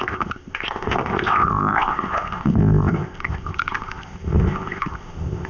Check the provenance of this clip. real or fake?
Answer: fake